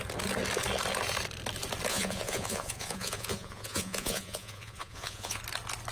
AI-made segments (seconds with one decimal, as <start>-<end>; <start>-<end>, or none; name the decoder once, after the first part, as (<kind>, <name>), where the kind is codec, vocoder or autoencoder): 1.9-5.4 (vocoder, Vocos)